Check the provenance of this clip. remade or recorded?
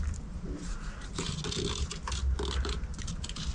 recorded